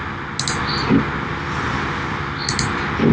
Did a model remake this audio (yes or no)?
no